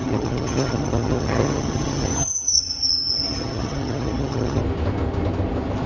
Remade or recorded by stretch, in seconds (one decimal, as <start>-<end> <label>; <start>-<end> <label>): 0.0-4.6 remade; 4.6-5.9 recorded